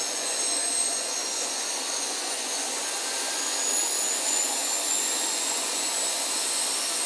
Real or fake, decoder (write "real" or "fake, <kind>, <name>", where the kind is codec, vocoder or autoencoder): fake, vocoder, Vocos